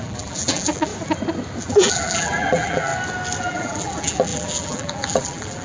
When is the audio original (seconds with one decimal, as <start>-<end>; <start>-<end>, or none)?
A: 0.9-1.6; 2.9-3.4